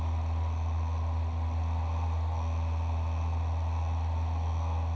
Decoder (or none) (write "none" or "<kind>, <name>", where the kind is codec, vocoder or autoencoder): none